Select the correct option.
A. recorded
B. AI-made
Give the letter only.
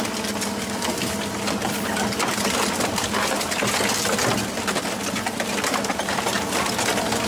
A